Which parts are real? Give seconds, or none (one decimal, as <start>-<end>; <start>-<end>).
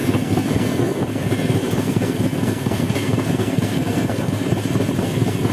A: 4.5-5.0